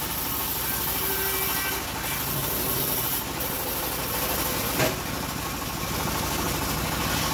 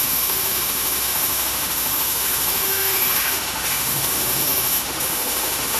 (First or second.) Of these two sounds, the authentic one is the first